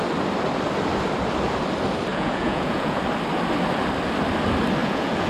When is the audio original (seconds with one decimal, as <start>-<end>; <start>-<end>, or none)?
0.0-2.1; 3.0-4.8